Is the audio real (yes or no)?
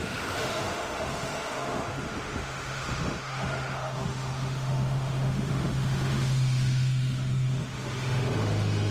no